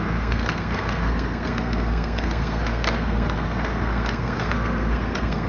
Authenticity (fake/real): fake